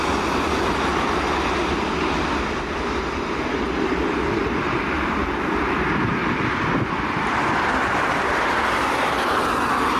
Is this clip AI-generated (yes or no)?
no